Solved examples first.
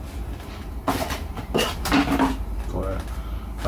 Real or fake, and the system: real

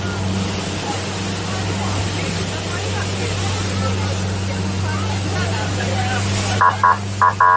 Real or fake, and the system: real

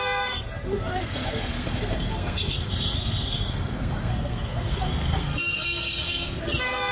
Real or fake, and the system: fake, codec, SNAC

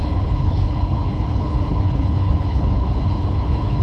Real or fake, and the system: fake, codec, HILCodec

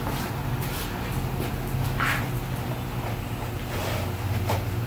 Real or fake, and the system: real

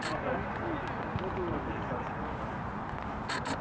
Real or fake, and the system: real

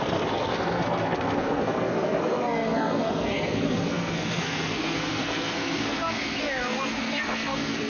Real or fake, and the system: fake, codec, SNAC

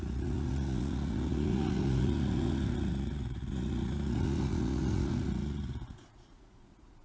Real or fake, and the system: fake, vocoder, Vocos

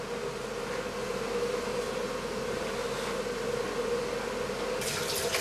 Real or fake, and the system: real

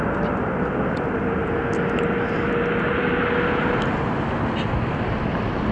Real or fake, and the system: real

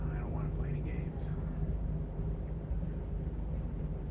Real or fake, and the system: fake, vocoder, BigVGAN v2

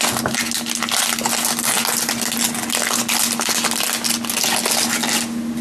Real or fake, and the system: real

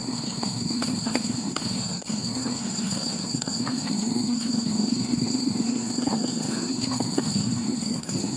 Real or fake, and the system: fake, codec, SNAC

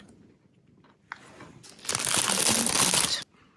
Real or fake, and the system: real